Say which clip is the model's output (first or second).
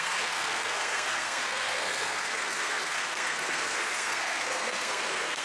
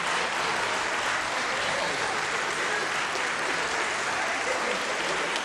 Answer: first